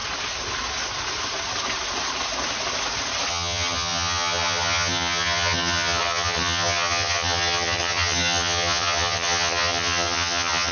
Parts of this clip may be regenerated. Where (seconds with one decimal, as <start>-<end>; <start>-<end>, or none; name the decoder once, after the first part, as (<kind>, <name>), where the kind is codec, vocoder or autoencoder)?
3.3-10.7 (vocoder, HiFi-GAN)